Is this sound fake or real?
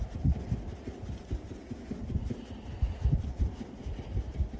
real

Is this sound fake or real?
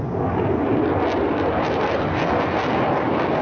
real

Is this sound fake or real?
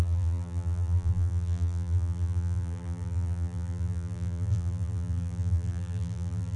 fake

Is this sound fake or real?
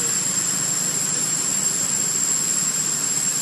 fake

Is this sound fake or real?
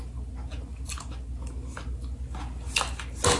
real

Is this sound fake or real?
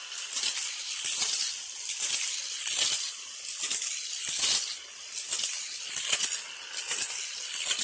real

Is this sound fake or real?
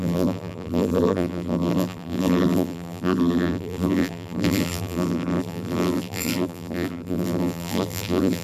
fake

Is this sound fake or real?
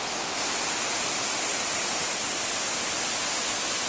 real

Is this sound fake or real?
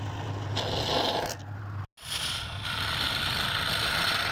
real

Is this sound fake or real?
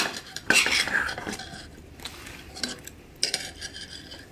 fake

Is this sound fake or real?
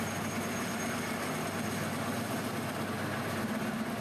real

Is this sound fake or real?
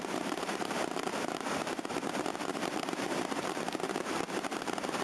fake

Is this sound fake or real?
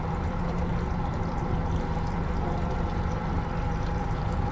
fake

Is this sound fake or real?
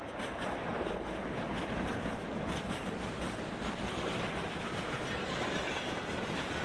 fake